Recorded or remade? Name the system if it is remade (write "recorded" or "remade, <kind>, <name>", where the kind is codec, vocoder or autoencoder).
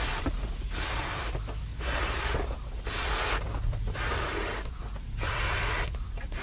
recorded